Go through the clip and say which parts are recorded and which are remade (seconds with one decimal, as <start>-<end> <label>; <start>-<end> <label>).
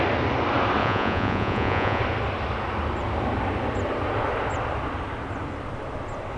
0.0-0.8 recorded; 0.8-2.0 remade; 2.0-6.4 recorded